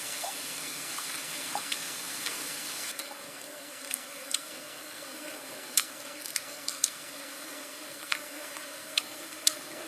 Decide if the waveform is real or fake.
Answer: fake